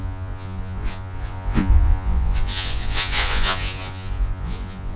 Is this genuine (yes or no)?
no